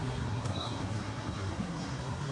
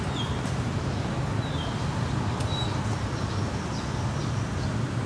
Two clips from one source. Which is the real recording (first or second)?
second